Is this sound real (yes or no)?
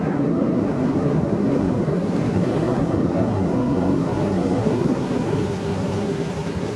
no